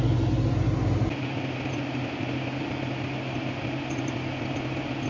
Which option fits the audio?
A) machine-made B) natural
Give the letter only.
B